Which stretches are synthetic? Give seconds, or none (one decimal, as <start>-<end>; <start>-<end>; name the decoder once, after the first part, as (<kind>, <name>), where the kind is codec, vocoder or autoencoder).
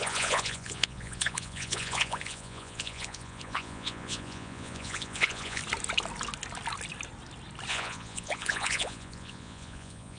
0.0-5.6 (vocoder, Vocos); 7.7-10.2